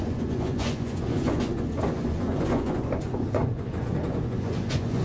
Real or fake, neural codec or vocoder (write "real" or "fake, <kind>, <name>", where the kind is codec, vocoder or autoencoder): fake, vocoder, Vocos